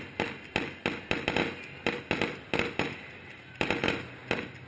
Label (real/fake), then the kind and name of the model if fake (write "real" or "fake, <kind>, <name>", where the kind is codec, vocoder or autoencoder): real